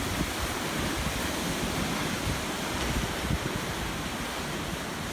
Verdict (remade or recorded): recorded